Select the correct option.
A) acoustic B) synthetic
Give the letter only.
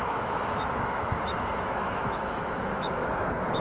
B